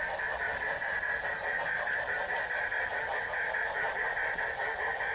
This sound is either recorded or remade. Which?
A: recorded